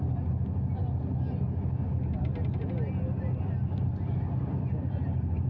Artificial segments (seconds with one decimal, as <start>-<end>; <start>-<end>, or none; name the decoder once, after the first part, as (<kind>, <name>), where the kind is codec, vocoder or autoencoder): none